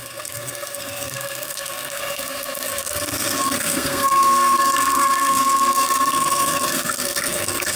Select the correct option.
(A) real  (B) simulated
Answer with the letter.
B